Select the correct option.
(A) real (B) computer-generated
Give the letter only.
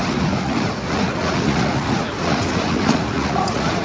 B